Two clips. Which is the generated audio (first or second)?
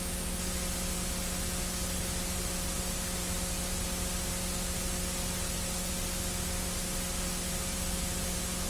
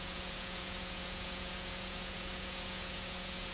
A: second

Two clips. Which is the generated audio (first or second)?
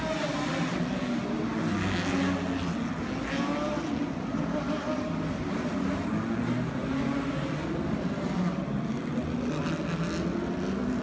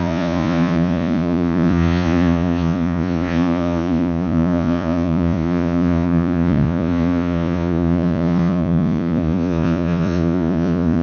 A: second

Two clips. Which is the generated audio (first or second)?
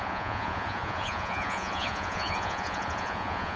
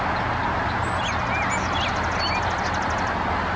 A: first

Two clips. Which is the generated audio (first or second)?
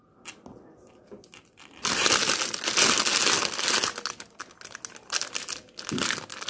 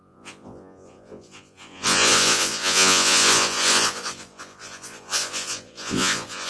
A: second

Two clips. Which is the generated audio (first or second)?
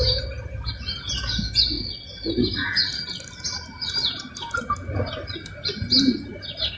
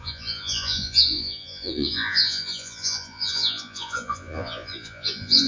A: second